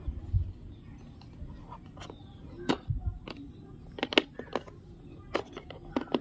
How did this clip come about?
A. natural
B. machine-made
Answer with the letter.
A